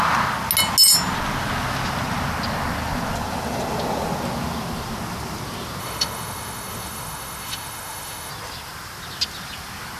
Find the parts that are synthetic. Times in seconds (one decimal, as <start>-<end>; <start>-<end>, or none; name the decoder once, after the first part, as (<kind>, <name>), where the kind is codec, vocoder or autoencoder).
5.8-8.3 (autoencoder, DAC-VAE)